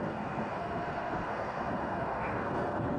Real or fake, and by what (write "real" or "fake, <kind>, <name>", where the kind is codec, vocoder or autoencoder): fake, codec, SNAC